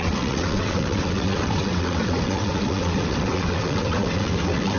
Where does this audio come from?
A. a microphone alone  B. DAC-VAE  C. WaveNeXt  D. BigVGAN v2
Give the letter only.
C